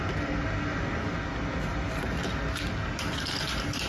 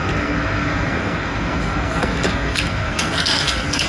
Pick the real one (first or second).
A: first